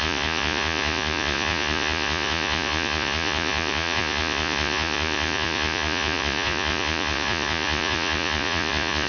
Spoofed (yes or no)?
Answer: yes